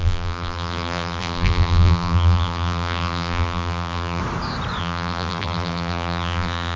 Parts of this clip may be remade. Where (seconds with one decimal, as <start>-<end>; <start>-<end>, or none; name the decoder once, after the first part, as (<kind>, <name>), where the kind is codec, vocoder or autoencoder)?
0.0-4.2 (vocoder, BigVGAN v2); 4.8-6.8

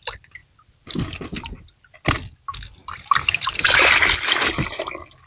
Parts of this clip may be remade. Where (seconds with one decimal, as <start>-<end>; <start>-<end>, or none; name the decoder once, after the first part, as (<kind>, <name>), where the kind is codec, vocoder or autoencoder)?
none

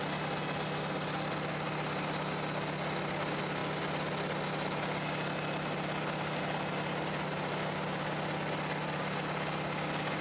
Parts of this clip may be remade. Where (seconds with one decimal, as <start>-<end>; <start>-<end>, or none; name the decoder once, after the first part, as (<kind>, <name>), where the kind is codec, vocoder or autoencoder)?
none

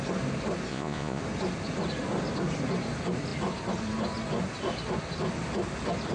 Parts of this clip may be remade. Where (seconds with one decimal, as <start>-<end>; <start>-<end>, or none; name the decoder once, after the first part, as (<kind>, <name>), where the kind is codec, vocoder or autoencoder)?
0.7-1.2 (vocoder, Vocos)